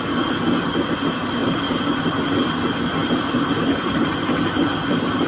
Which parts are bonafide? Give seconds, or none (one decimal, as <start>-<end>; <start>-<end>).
0.0-1.4; 2.3-3.0